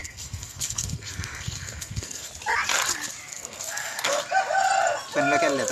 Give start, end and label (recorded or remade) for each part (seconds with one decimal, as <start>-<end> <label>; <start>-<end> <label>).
0.0-2.3 remade; 2.3-3.3 recorded; 3.3-4.2 remade; 4.2-5.7 recorded